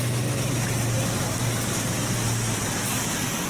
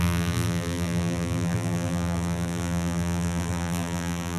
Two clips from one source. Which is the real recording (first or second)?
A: first